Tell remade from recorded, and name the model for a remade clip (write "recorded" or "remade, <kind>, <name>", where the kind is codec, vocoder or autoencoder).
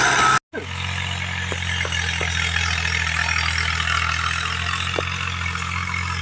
recorded